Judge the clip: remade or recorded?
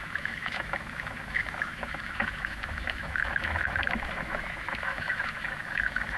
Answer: remade